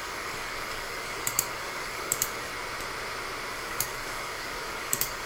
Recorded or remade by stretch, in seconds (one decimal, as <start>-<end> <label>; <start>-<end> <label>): 0.0-2.5 remade; 2.5-3.5 recorded; 3.5-5.3 remade